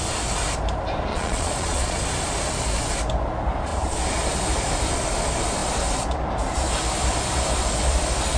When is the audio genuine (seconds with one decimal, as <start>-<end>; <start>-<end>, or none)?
0.0-1.1; 2.0-8.4